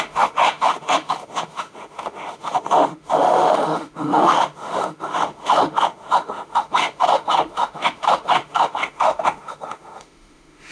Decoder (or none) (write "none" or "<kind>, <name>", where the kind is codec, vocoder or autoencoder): autoencoder, DAC-VAE